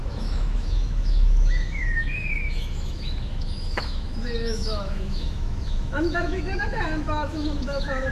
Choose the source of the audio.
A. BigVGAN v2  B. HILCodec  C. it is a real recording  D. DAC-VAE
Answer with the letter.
D